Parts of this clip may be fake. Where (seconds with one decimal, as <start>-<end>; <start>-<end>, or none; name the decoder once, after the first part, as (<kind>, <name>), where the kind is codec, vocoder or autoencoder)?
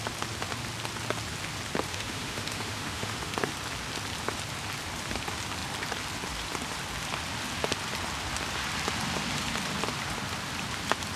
1.9-3.5 (autoencoder, DAC-VAE)